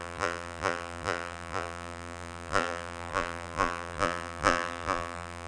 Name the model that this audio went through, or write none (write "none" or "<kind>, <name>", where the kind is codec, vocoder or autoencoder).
vocoder, BigVGAN v2